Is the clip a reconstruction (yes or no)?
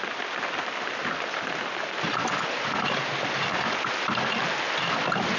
no